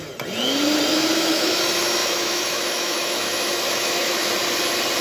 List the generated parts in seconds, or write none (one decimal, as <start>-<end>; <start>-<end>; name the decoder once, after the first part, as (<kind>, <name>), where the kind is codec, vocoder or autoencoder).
0.9-1.6 (autoencoder, DAC-VAE); 2.0-4.3